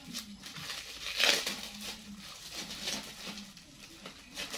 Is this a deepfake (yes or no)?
no